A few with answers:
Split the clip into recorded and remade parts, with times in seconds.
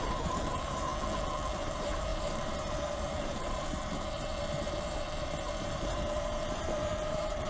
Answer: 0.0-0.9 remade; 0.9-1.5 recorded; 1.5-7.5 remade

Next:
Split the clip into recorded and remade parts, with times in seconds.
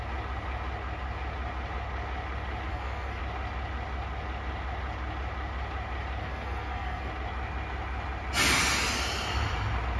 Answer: 0.0-2.7 recorded; 2.7-3.2 remade; 3.2-6.2 recorded; 6.2-7.1 remade; 7.1-10.0 recorded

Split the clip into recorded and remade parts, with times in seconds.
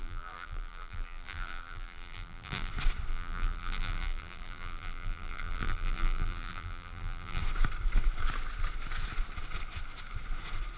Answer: 0.0-2.7 remade; 2.7-3.1 recorded; 3.1-7.4 remade; 7.4-10.8 recorded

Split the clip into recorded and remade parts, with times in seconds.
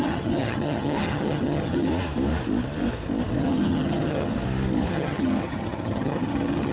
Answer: 0.0-1.9 remade; 1.9-3.4 recorded; 3.4-4.3 remade; 4.3-4.9 recorded; 4.9-6.7 remade